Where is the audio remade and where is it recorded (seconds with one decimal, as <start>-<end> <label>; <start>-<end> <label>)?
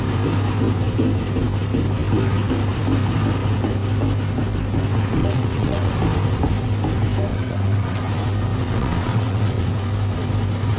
0.0-5.2 recorded; 5.2-5.9 remade; 5.9-7.3 recorded; 7.3-8.0 remade; 8.0-8.6 recorded; 8.6-9.7 remade; 9.7-10.8 recorded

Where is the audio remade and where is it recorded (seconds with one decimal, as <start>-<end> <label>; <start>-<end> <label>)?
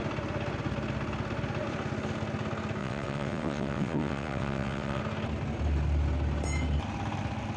0.0-2.8 recorded; 2.8-5.0 remade; 5.0-7.6 recorded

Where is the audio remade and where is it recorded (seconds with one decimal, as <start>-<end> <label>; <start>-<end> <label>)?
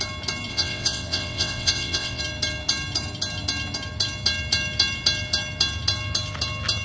0.0-0.5 recorded; 0.5-2.2 remade; 2.2-6.8 recorded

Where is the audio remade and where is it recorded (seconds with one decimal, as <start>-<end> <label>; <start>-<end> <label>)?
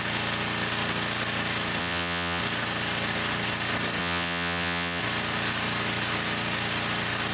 0.0-1.8 recorded; 1.8-2.4 remade; 2.4-4.0 recorded; 4.0-5.0 remade; 5.0-7.3 recorded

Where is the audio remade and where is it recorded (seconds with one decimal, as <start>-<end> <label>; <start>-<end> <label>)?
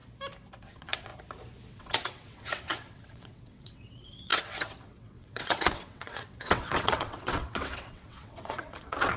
0.0-0.6 recorded; 0.6-1.1 remade; 1.1-1.7 recorded; 1.7-9.2 remade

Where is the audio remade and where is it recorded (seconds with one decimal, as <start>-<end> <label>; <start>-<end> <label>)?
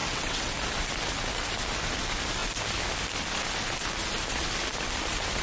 0.0-0.5 remade; 0.5-5.4 recorded